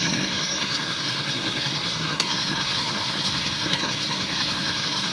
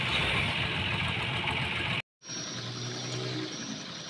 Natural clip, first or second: second